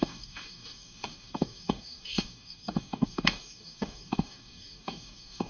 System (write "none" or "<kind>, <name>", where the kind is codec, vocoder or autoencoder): codec, DAC